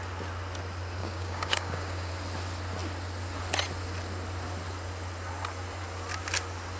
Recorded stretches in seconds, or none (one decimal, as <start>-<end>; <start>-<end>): 0.0-1.0; 2.1-6.8